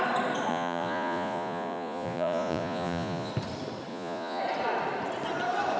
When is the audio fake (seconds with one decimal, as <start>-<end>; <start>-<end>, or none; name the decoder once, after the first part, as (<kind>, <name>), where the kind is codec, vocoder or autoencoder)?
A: 0.5-3.3 (vocoder, Vocos); 3.9-4.4